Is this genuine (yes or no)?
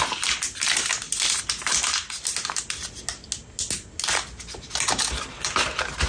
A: yes